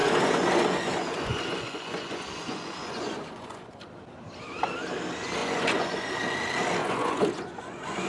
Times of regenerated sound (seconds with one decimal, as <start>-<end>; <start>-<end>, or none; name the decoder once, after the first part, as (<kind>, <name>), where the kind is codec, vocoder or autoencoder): 0.0-3.8 (vocoder, Vocos); 5.4-6.1; 6.8-8.1